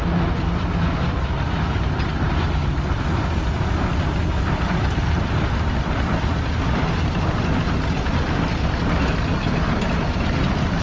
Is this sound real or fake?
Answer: real